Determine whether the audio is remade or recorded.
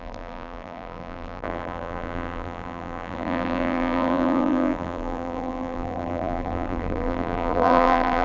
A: remade